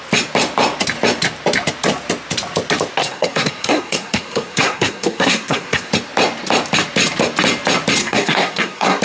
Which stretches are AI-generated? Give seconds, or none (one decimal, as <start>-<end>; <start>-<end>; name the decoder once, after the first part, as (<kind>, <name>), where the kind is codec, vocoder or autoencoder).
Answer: 3.0-5.9 (codec, SNAC); 8.0-9.0